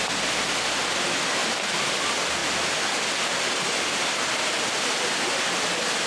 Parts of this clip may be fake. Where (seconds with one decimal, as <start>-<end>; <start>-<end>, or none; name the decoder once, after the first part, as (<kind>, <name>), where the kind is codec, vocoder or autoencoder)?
none